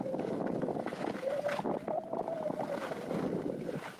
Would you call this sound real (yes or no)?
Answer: yes